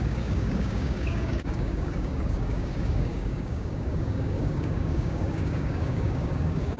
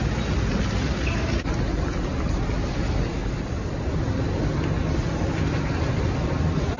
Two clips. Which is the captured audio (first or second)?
second